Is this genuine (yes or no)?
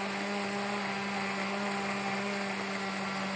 yes